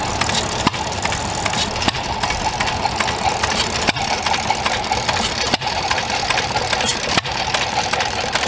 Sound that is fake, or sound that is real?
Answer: real